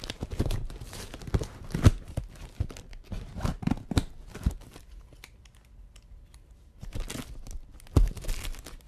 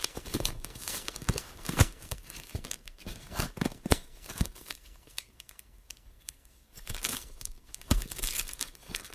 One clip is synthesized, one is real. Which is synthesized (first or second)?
second